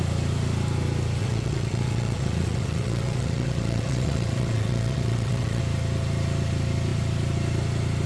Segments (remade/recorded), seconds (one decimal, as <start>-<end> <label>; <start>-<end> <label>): 0.0-1.2 recorded; 1.2-5.6 remade; 5.6-8.1 recorded